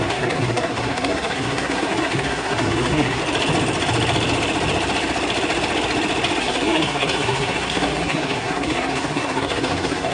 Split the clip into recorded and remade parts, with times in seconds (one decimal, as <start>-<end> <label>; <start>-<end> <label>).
0.0-3.2 remade; 3.2-6.4 recorded; 6.4-10.1 remade